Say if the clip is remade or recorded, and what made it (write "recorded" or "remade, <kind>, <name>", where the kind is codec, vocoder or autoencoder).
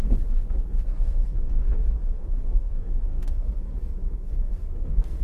remade, codec, SNAC